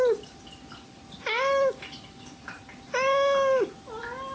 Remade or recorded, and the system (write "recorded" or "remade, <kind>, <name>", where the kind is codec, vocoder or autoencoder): recorded